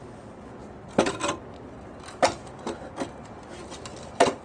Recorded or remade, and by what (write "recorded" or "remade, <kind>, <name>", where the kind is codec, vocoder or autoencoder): recorded